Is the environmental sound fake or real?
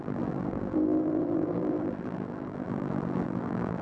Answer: fake